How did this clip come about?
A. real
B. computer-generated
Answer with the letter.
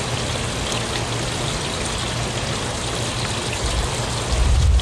A